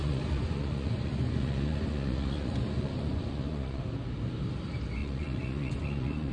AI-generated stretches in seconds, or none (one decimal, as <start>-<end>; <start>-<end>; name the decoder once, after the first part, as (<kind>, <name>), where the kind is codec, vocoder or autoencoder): 0.0-3.8 (vocoder, Vocos); 5.0-6.3